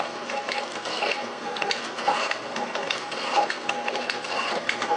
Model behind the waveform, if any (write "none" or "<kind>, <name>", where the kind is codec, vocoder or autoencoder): codec, SNAC